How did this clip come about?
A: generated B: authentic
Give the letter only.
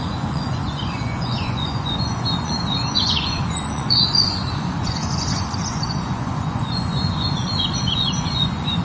A